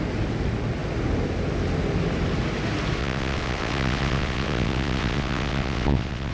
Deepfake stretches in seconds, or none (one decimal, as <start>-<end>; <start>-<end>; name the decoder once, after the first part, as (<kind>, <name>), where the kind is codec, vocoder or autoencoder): 3.0-6.3 (vocoder, WaveNeXt)